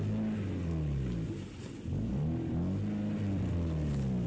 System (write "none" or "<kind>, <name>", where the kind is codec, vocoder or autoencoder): none